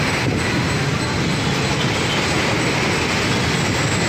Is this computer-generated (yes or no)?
no